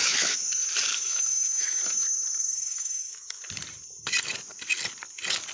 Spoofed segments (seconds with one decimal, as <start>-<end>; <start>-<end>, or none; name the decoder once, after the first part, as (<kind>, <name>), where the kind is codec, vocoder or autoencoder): 0.0-0.5 (autoencoder, DAC-VAE); 0.9-1.8; 2.4-3.4